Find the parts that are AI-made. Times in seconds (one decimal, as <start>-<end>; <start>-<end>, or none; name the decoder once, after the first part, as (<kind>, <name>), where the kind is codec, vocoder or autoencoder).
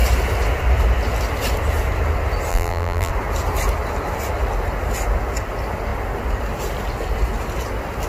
2.5-3.1 (vocoder, BigVGAN v2)